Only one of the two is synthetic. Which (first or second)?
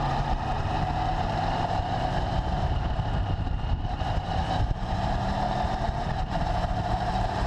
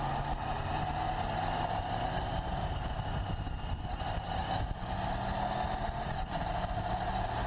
first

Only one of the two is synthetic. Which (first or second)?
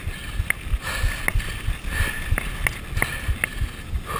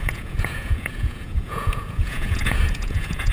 second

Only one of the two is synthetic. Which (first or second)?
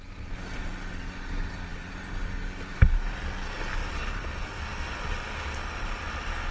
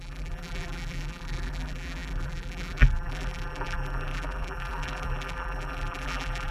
second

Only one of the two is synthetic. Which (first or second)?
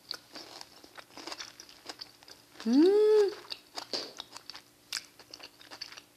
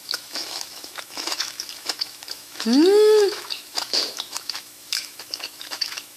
second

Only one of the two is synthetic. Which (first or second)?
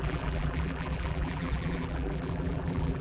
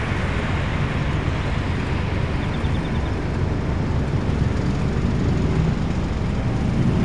first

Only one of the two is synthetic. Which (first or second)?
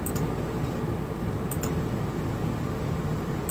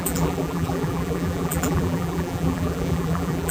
second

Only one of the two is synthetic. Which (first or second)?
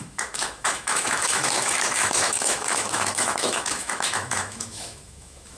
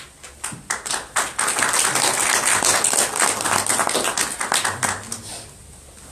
first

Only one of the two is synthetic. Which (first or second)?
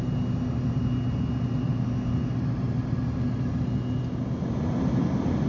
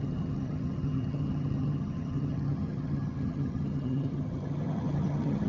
second